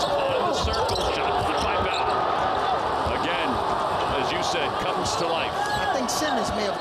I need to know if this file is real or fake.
real